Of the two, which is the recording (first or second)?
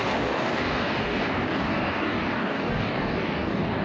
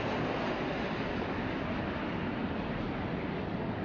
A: second